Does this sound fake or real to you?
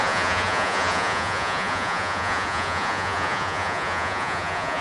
fake